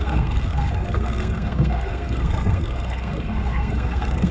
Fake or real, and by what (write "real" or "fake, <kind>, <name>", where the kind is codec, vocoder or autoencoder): fake, codec, SNAC